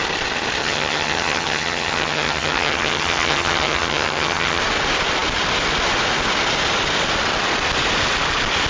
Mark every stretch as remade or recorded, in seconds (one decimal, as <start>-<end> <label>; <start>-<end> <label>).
0.0-0.6 recorded; 0.6-4.6 remade; 4.6-8.7 recorded